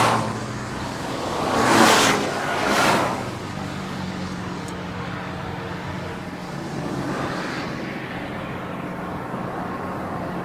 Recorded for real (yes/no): no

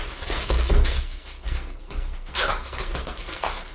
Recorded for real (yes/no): no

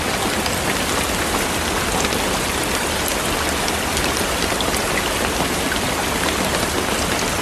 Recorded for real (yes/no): yes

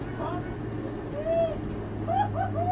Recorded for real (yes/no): yes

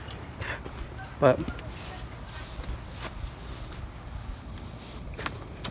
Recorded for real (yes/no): yes